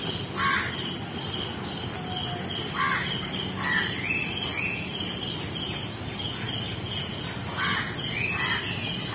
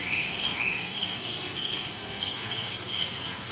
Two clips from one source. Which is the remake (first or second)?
second